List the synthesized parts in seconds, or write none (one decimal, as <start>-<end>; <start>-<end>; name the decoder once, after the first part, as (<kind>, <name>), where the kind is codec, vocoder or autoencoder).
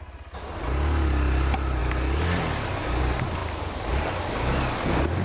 3.4-4.2 (vocoder, BigVGAN v2)